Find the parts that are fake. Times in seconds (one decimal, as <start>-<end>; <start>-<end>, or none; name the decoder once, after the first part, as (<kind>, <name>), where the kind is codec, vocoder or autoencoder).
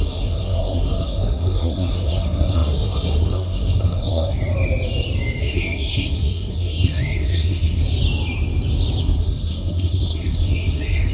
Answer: 0.0-4.4 (codec, SNAC); 5.4-7.8; 9.0-11.1